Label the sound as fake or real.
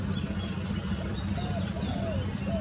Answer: real